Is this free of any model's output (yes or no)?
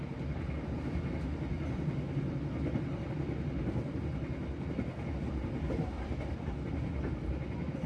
yes